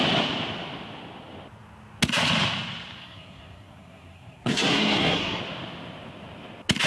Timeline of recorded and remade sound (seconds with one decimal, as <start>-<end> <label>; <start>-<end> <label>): 0.0-3.0 recorded; 3.0-5.4 remade; 5.4-6.9 recorded